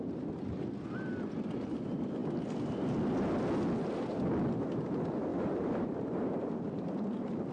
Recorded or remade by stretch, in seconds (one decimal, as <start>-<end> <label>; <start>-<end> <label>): 0.0-5.3 recorded; 5.3-6.5 remade; 6.5-7.5 recorded